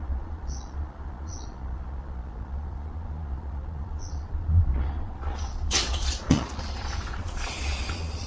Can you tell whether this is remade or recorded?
remade